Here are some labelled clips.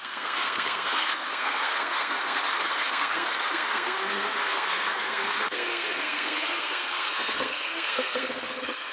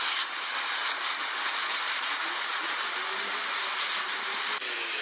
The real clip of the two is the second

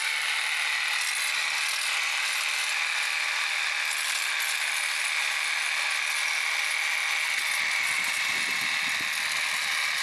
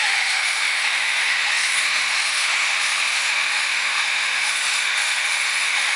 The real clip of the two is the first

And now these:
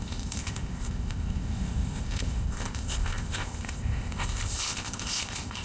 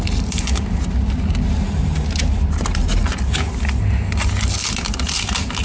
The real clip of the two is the second